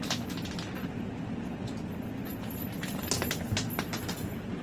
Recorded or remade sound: recorded